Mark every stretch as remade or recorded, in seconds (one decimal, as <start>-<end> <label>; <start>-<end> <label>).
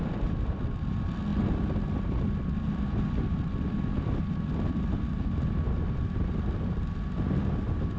0.0-8.0 recorded